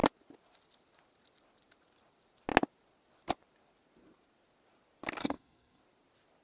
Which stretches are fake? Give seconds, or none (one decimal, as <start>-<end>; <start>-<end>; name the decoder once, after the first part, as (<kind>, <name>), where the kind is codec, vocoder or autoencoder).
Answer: 5.2-5.8 (codec, SNAC)